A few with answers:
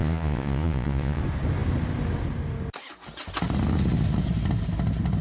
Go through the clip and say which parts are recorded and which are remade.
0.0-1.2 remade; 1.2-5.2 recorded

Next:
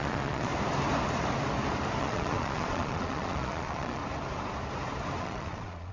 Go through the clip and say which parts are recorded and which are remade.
0.0-0.5 remade; 0.5-2.0 recorded; 2.0-4.0 remade; 4.0-5.2 recorded; 5.2-5.9 remade

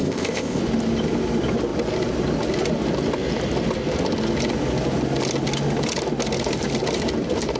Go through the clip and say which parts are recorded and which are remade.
0.0-0.6 remade; 0.6-7.6 recorded